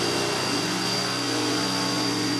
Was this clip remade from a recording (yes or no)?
yes